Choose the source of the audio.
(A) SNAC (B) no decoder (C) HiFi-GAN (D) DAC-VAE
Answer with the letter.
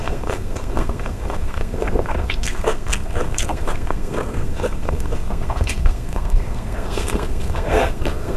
A